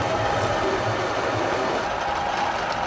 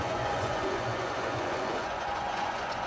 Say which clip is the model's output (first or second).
second